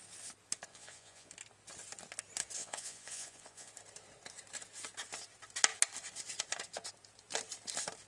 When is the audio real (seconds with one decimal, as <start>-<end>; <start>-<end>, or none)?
0.0-0.7; 1.3-2.6; 3.7-8.1